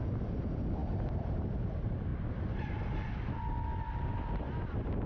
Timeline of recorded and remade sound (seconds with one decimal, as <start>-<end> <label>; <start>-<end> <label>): 0.0-5.1 recorded